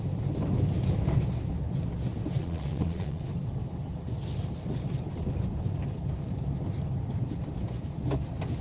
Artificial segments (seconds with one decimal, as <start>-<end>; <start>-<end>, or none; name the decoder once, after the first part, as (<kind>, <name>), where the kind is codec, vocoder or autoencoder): 2.4-3.2 (vocoder, Vocos)

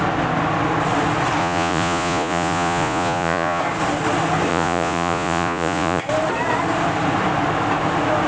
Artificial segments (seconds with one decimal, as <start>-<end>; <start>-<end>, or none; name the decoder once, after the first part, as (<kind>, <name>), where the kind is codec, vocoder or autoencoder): 1.4-3.6 (vocoder, Vocos); 4.5-6.0

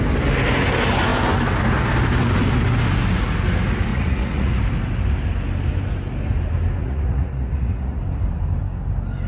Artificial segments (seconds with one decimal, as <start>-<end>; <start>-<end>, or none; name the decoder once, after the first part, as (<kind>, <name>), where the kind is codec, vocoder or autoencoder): 3.9-4.6 (vocoder, Vocos); 6.8-8.0

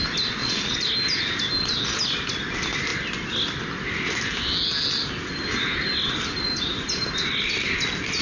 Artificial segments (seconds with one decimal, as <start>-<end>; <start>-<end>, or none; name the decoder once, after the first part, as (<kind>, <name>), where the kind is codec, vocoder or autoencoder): 0.4-0.9 (vocoder, Vocos)

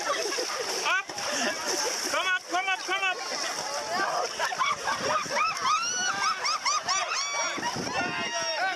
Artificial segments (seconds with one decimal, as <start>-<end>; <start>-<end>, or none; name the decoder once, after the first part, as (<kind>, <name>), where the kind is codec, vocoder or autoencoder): none

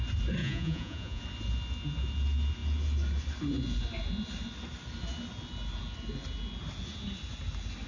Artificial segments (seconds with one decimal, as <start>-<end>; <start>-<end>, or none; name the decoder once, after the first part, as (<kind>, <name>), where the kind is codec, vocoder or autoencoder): 0.4-1.2 (vocoder, Vocos)

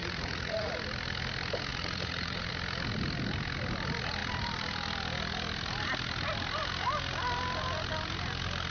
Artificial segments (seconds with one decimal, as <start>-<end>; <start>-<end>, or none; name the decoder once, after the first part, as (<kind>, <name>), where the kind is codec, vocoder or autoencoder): 0.0-0.7 (vocoder, Vocos); 1.7-2.5